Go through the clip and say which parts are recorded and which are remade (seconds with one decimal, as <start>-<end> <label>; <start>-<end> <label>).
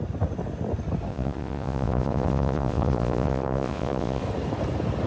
0.0-1.1 recorded; 1.1-4.2 remade; 4.2-5.1 recorded